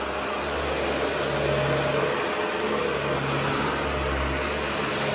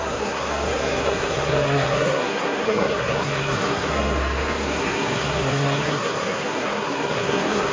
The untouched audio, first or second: first